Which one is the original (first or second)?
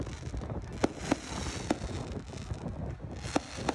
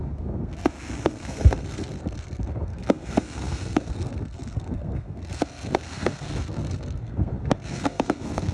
first